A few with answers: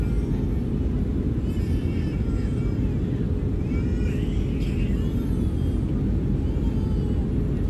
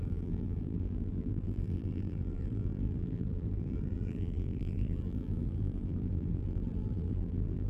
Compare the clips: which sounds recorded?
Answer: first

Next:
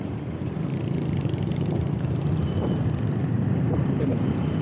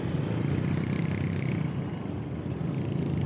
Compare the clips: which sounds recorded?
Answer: second